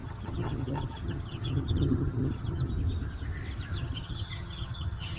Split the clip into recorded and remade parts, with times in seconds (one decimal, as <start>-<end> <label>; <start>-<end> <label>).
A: 0.0-2.7 remade; 2.7-3.7 recorded; 3.7-5.2 remade